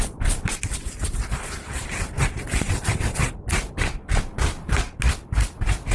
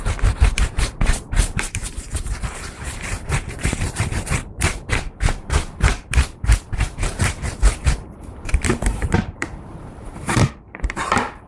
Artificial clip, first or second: second